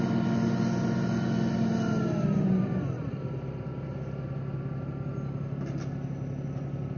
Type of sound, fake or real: real